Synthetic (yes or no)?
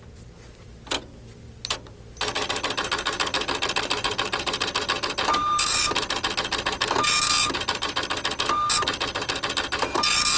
no